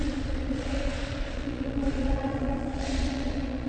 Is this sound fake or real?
fake